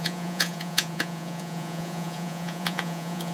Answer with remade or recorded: remade